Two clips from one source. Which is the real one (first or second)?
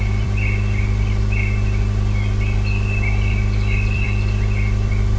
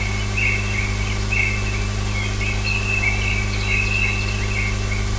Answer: second